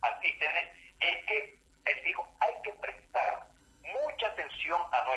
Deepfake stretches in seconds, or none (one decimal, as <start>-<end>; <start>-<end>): 0.5-3.6